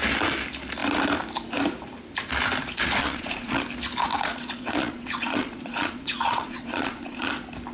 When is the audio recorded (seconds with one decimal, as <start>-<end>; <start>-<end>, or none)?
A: 0.0-3.0; 3.6-4.1; 7.3-7.7